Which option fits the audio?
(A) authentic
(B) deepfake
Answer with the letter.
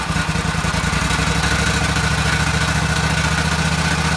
A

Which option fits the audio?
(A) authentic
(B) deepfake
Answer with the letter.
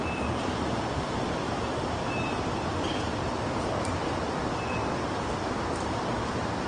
B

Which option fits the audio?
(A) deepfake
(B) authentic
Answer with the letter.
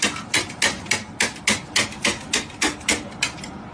B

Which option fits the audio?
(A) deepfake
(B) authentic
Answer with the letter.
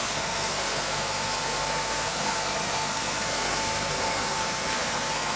A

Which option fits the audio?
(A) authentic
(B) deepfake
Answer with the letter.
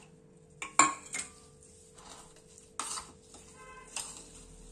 A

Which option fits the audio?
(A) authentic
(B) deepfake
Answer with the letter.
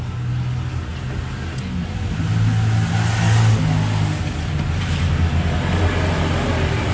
A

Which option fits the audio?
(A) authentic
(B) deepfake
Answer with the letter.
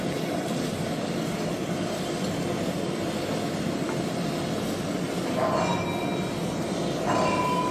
A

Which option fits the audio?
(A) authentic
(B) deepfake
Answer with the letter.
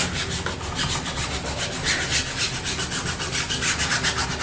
A